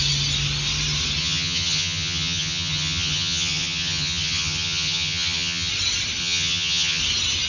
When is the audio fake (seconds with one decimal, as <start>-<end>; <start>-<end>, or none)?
1.2-5.7; 6.2-7.0